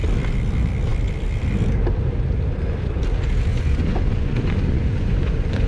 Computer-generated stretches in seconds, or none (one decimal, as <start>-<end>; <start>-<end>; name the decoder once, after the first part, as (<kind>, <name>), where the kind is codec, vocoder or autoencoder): 3.5-5.7 (vocoder, Vocos)